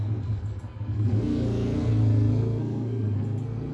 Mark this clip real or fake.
fake